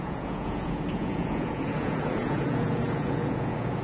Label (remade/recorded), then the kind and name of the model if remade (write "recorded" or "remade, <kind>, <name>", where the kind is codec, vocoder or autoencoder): remade, vocoder, Vocos